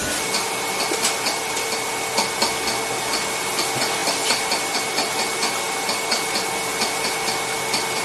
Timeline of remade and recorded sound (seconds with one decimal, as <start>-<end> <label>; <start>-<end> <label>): 0.0-8.0 recorded